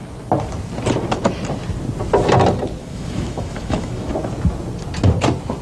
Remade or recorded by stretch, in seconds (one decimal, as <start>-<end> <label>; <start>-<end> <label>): 0.0-2.8 recorded; 2.8-4.1 remade; 4.1-5.6 recorded